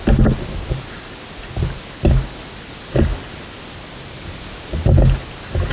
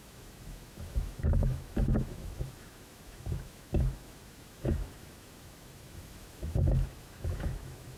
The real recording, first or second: first